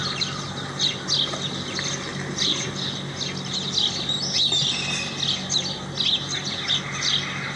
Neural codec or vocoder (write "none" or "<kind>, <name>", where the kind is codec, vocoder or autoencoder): none